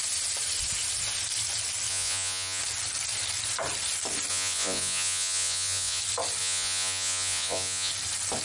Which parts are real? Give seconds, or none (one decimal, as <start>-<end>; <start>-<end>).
0.0-1.9; 2.6-4.3; 6.0-6.4; 7.9-8.4